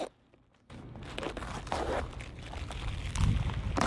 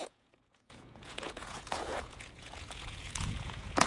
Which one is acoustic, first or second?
first